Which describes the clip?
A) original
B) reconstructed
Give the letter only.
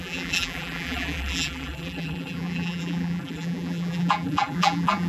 B